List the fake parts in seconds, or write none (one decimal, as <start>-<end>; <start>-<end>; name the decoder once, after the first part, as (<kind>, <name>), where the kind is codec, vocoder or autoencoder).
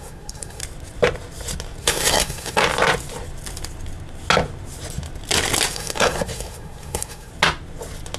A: 0.0-0.6 (codec, SNAC); 1.8-2.6; 5.7-7.3